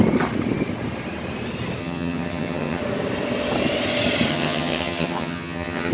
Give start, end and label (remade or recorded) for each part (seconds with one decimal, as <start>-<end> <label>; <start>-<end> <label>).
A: 0.0-1.8 recorded; 1.8-2.8 remade; 2.8-4.3 recorded; 4.3-5.9 remade